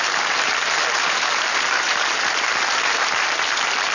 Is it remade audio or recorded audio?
recorded